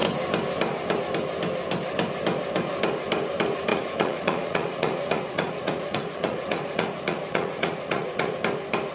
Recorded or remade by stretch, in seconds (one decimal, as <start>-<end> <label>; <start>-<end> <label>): 0.0-3.7 recorded; 3.7-8.4 remade; 8.4-8.9 recorded